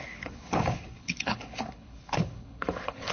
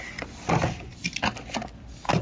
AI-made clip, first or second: first